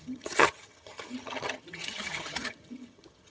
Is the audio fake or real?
fake